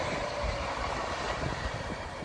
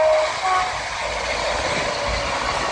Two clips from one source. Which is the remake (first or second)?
first